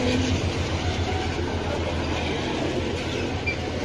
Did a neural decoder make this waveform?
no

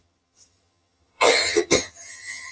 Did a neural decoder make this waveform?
yes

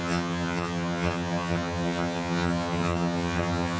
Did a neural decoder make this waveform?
yes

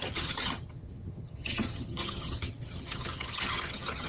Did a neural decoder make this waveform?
yes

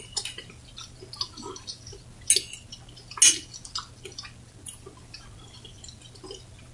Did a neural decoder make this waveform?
no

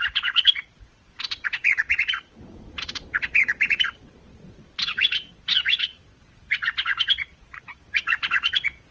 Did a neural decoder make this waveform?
yes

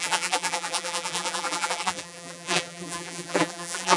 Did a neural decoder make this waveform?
yes